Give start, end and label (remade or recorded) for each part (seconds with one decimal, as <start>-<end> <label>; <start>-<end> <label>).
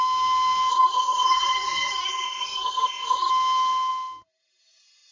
0.0-0.7 recorded; 0.7-3.3 remade; 3.3-5.1 recorded